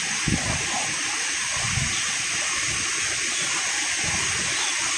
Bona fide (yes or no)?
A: yes